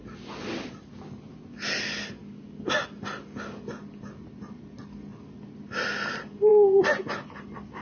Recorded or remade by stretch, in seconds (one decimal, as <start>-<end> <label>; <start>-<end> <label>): 0.0-7.8 recorded